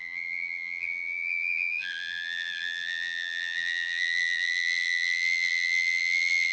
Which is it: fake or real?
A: fake